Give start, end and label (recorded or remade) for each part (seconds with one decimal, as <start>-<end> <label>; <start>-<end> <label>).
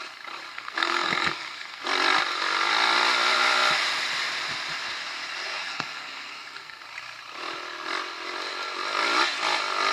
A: 0.0-0.5 recorded; 0.5-1.8 remade; 1.8-5.6 recorded; 5.6-6.8 remade; 6.8-9.9 recorded